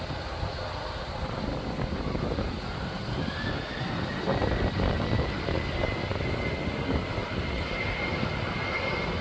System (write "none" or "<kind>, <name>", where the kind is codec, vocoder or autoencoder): none